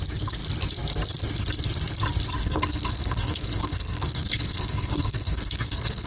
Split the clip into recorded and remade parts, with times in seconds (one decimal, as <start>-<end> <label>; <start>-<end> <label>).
0.0-2.4 recorded; 2.4-6.1 remade